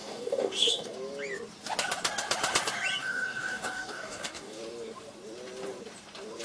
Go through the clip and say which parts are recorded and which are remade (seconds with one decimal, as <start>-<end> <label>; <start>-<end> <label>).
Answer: 0.0-0.9 remade; 0.9-3.0 recorded; 3.0-4.6 remade; 4.6-6.4 recorded